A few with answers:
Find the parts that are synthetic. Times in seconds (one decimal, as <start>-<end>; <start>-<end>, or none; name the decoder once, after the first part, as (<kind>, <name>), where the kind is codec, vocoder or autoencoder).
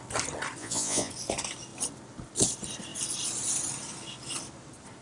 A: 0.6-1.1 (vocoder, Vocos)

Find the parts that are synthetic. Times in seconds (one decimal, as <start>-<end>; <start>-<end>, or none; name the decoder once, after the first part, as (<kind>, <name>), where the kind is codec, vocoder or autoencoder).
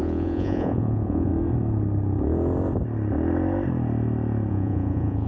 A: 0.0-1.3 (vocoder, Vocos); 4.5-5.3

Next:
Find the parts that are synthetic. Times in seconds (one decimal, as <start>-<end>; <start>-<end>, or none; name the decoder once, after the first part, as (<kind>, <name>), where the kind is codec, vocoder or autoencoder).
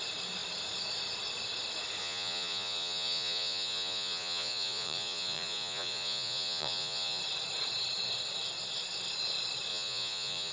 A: 2.0-7.2 (vocoder, Vocos); 9.7-10.5